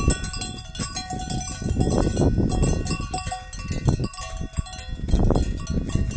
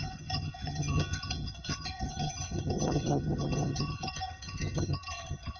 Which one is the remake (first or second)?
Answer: second